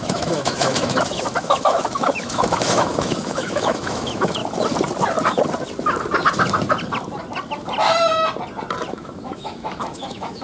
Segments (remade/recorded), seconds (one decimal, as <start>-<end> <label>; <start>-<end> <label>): 0.0-4.4 remade; 4.4-8.9 recorded; 8.9-10.4 remade